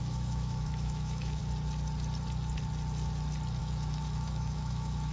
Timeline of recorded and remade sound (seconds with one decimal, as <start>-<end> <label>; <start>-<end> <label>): 0.0-1.4 remade; 1.4-3.6 recorded; 3.6-5.1 remade